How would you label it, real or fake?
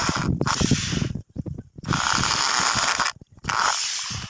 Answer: real